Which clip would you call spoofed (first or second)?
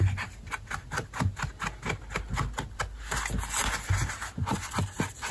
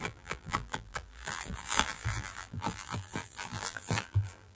second